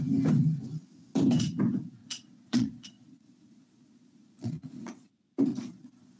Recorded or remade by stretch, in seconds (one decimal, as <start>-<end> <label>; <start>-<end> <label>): 0.0-2.0 recorded; 2.0-5.1 remade; 5.1-5.5 recorded; 5.5-6.2 remade